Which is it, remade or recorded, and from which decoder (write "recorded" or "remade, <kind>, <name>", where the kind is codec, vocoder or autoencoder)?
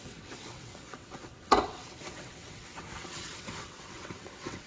remade, vocoder, WaveNeXt